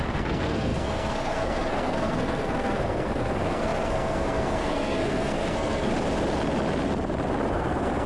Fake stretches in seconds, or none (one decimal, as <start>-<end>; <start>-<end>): 0.0-5.9; 7.5-8.1